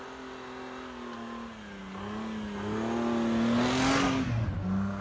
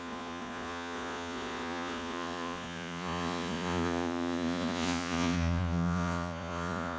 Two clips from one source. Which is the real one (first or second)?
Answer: first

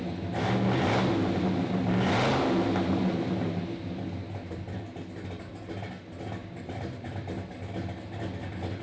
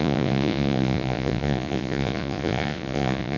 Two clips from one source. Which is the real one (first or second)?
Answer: first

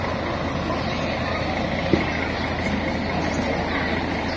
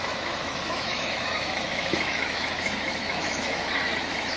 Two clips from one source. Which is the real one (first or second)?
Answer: first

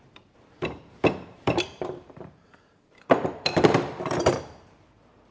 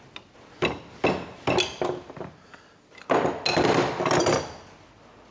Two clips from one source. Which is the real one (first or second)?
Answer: second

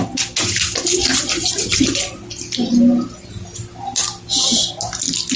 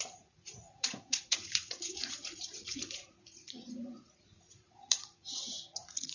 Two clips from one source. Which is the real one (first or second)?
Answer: first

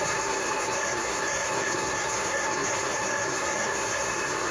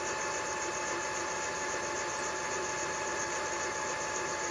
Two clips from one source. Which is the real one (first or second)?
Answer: second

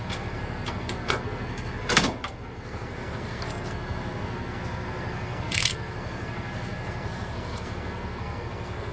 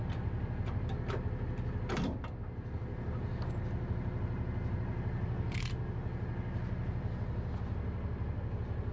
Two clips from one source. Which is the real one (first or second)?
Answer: second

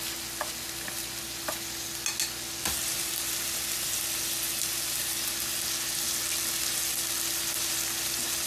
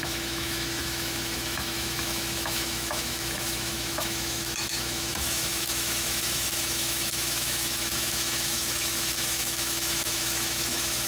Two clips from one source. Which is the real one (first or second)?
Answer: first